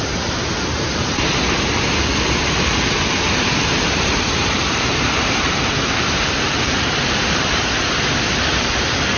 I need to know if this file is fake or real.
fake